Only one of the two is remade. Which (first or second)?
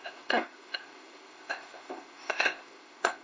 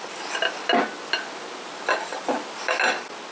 first